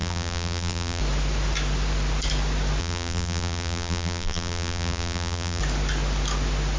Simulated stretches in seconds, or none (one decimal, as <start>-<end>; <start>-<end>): 0.0-1.0; 2.8-5.6